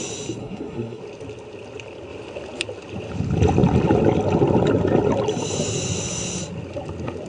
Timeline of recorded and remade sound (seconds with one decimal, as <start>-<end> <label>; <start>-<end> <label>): 0.0-0.4 recorded; 0.4-1.0 remade; 1.0-7.3 recorded